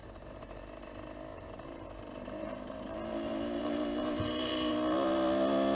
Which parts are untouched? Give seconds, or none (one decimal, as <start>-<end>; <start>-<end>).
0.6-1.3; 4.7-5.7